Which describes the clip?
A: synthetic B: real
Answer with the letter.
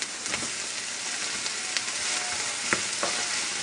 B